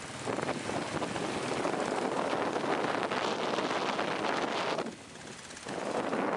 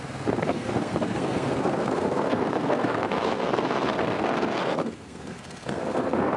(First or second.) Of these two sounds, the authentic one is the first